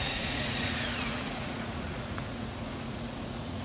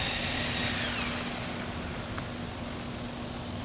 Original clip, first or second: second